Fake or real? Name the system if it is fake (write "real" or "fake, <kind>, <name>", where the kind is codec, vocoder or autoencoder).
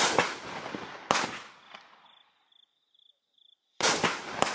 real